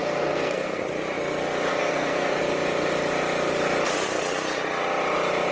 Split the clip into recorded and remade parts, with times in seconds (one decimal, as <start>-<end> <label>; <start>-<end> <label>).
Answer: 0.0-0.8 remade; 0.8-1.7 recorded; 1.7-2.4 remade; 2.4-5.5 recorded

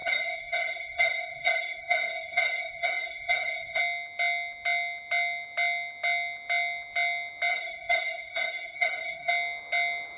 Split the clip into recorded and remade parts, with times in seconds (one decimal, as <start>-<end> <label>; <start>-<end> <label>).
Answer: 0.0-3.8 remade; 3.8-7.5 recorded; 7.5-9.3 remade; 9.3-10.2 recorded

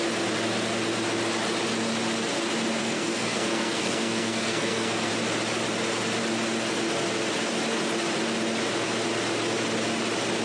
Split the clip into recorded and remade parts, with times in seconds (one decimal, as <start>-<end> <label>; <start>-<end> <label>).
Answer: 0.0-2.8 recorded; 2.8-5.1 remade; 5.1-10.4 recorded

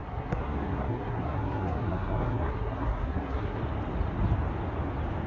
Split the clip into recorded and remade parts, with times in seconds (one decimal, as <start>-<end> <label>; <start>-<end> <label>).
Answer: 0.0-3.6 remade; 3.6-5.3 recorded

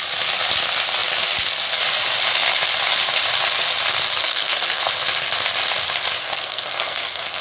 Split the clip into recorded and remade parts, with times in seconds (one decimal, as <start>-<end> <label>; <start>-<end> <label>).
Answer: 0.0-4.2 recorded; 4.2-4.9 remade; 4.9-6.2 recorded; 6.2-7.4 remade

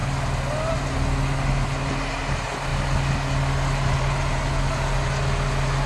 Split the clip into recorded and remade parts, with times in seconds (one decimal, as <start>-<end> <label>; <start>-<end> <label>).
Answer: 0.0-5.9 recorded

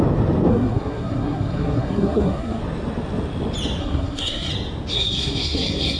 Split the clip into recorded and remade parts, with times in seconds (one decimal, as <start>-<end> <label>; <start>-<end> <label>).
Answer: 0.0-0.5 recorded; 0.5-2.6 remade; 2.6-3.8 recorded; 3.8-4.5 remade; 4.5-4.9 recorded; 4.9-6.0 remade